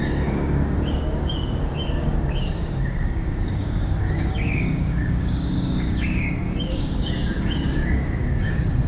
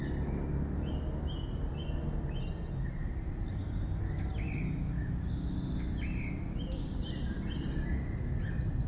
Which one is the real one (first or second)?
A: second